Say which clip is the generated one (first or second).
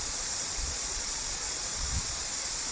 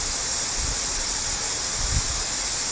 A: first